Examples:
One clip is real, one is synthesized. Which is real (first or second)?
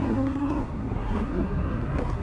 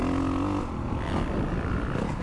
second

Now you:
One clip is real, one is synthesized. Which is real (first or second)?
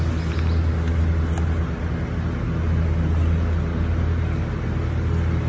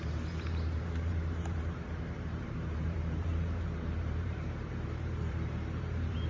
first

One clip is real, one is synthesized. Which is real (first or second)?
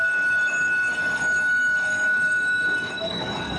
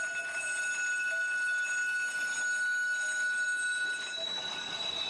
second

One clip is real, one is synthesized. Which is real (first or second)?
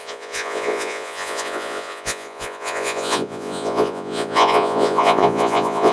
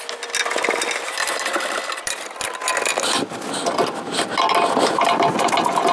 second